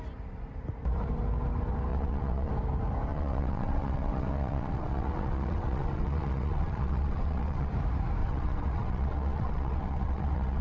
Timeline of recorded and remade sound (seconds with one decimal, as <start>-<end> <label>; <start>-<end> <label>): 0.0-1.9 recorded; 1.9-2.5 remade; 2.5-3.1 recorded; 3.1-7.7 remade; 7.7-8.2 recorded; 8.2-10.6 remade